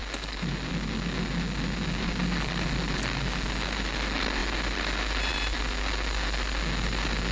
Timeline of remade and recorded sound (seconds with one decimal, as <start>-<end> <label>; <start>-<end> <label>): 0.0-7.3 recorded

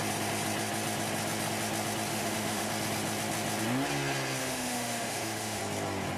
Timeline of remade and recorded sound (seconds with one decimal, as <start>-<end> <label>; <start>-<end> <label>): 0.0-2.1 recorded; 2.1-2.7 remade; 2.7-4.4 recorded; 4.4-5.6 remade; 5.6-6.2 recorded

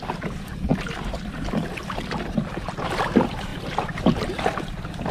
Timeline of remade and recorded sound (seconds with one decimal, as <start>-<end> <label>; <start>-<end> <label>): 0.0-5.1 recorded

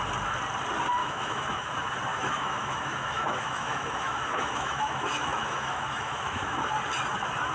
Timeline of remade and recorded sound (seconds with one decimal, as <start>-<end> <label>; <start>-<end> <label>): 0.0-1.0 recorded; 1.0-1.7 remade; 1.7-2.1 recorded; 2.1-6.6 remade; 6.6-7.5 recorded